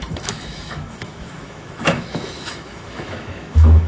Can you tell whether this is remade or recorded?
remade